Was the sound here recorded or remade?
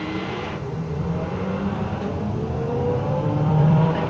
remade